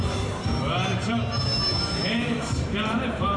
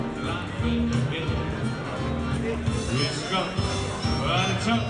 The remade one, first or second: first